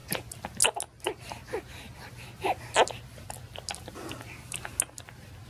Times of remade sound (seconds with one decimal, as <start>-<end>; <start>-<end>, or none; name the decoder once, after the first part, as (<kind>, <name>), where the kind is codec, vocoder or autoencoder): none